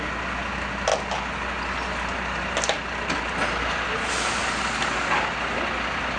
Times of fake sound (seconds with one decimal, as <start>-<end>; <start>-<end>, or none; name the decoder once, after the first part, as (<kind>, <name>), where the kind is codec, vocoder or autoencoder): none